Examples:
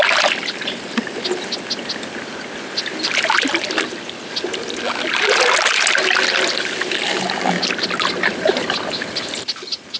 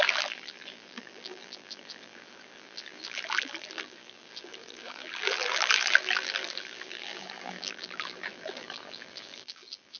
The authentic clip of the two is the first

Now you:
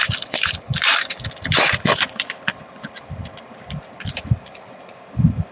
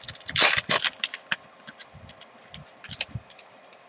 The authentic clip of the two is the second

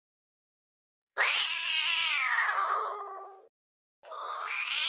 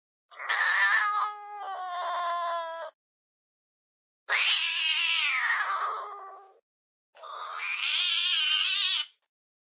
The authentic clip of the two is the second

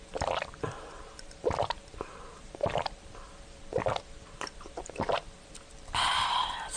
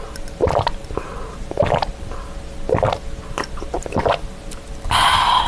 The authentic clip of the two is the second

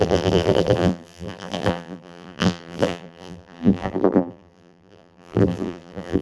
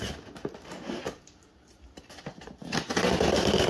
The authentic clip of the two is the second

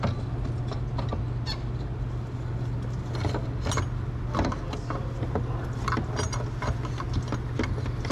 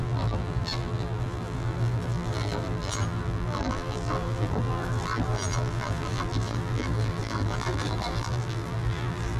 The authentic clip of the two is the first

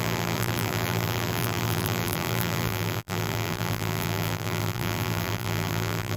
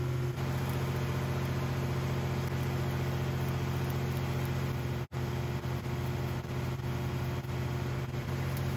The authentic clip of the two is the second